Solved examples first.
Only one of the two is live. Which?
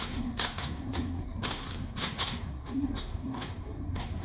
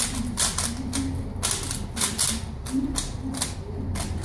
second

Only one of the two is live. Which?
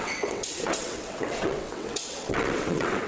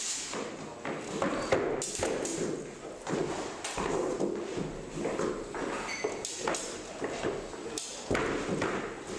second